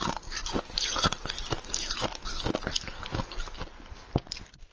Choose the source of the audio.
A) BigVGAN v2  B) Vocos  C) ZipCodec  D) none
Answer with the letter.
D